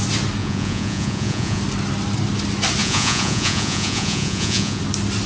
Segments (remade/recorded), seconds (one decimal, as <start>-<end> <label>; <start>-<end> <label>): 0.0-0.4 recorded; 0.4-1.6 remade; 1.6-2.8 recorded; 2.8-4.8 remade; 4.8-5.3 recorded